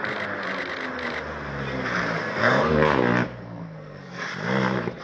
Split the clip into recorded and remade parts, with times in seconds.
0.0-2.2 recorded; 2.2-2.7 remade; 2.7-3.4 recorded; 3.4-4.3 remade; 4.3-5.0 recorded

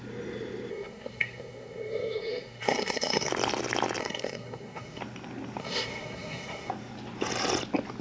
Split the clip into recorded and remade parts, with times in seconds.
0.0-0.7 recorded; 0.7-3.3 remade; 3.3-4.0 recorded; 4.0-5.0 remade; 5.0-5.6 recorded; 5.6-6.7 remade; 6.7-8.0 recorded

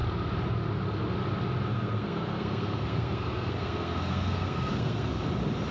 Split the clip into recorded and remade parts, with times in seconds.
0.0-1.7 recorded; 1.7-5.1 remade; 5.1-5.7 recorded

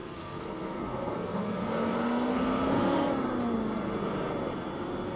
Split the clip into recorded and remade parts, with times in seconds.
0.0-3.1 remade; 3.1-5.2 recorded